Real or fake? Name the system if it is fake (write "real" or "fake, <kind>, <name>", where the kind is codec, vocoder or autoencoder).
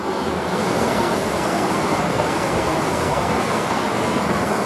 fake, codec, SNAC